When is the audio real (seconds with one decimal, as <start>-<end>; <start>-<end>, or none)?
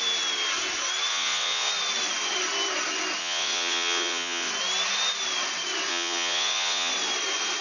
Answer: 0.0-1.1; 1.7-3.2; 4.5-5.9; 6.9-7.6